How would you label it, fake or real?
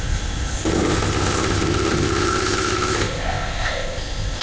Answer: fake